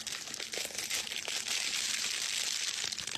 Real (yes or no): yes